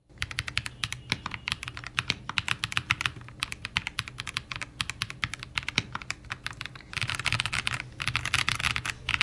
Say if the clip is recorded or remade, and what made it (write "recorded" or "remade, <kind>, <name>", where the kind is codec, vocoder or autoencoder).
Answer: recorded